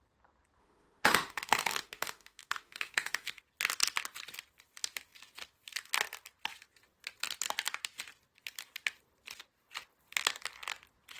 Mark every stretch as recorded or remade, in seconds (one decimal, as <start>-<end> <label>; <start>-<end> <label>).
0.0-0.6 recorded; 0.6-3.4 remade; 3.4-11.2 recorded